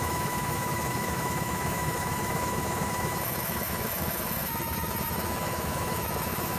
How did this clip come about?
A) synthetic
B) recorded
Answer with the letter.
A